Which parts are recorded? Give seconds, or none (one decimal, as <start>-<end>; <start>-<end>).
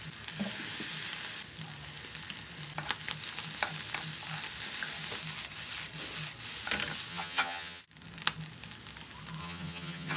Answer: 0.0-7.1; 7.8-9.4